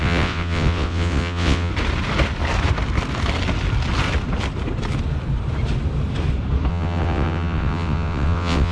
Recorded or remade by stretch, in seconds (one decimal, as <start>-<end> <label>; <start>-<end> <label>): 0.0-1.7 remade; 1.7-6.7 recorded; 6.7-8.7 remade